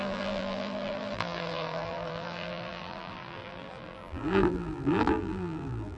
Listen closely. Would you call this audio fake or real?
fake